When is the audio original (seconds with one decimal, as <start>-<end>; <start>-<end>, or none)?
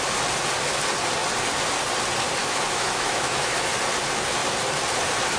0.0-2.4; 3.7-5.4